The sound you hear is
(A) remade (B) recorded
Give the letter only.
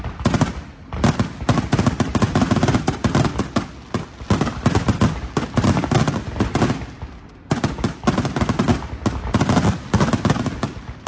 B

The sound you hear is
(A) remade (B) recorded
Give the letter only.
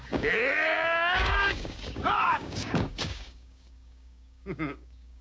A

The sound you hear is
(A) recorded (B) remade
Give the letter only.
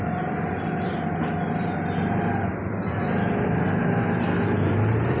A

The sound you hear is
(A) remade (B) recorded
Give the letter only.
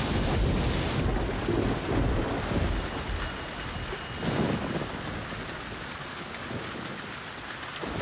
B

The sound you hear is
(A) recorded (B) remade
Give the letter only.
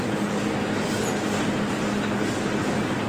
A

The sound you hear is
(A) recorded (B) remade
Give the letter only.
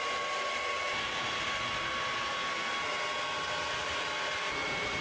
A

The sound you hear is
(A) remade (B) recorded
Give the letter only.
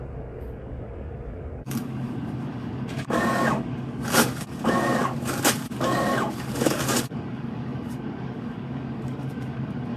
A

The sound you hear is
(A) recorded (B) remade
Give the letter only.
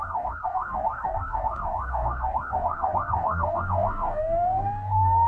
B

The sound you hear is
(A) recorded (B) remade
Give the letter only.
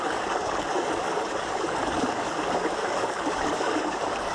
B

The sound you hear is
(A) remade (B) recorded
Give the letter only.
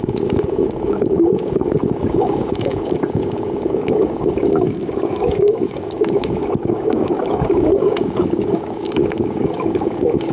A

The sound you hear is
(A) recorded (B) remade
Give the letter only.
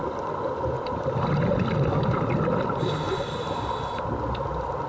A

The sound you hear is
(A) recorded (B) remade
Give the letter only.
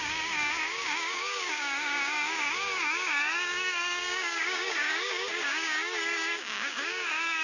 B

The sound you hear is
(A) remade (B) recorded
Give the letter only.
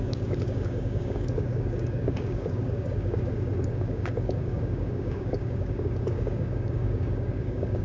A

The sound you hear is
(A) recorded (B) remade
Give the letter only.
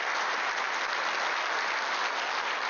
A